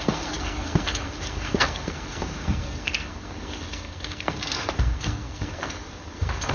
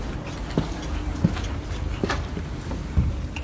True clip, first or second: second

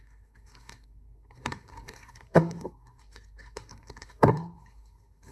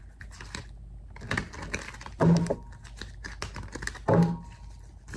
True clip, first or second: second